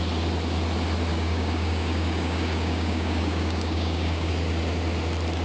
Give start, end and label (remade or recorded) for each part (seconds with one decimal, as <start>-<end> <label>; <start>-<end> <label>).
0.0-1.1 recorded; 1.1-4.3 remade; 4.3-5.4 recorded